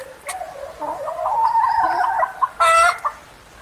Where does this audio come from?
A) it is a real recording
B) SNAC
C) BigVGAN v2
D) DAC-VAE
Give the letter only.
A